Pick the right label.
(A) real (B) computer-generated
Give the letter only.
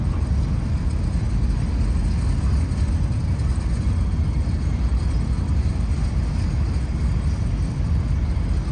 A